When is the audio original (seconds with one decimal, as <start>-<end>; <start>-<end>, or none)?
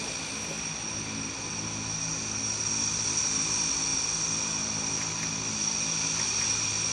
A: 0.0-6.9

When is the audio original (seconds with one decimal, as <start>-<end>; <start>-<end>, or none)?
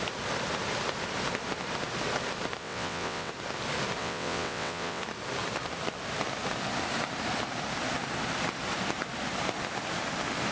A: 0.0-2.6; 3.3-4.0; 5.0-10.5